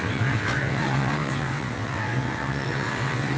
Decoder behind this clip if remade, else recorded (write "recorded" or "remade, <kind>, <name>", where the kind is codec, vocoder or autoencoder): remade, vocoder, WaveNeXt